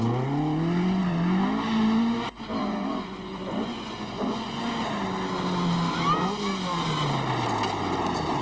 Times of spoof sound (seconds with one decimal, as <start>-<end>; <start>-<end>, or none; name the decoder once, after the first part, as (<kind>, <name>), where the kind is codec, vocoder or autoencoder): 2.6-4.6 (vocoder, Vocos)